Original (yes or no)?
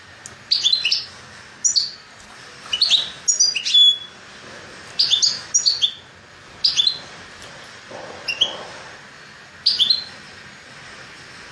yes